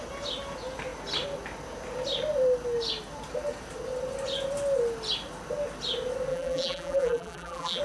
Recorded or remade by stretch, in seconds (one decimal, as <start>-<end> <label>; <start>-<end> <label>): 0.0-6.3 recorded; 6.3-7.8 remade